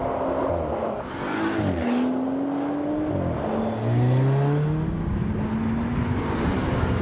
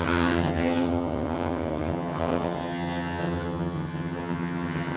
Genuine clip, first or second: first